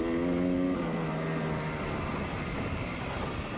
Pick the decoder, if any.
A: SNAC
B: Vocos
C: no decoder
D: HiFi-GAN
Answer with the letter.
C